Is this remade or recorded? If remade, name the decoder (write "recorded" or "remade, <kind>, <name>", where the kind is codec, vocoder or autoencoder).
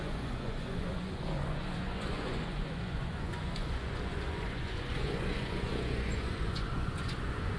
remade, vocoder, Vocos